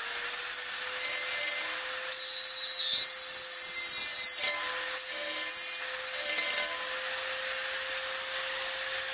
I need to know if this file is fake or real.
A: real